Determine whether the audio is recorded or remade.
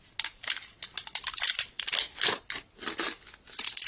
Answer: recorded